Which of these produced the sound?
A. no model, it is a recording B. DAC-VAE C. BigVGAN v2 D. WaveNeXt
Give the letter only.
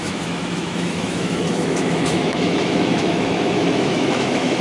B